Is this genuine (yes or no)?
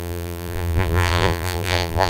no